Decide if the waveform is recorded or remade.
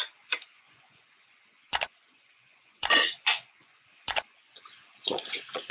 remade